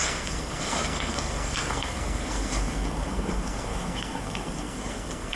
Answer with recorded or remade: remade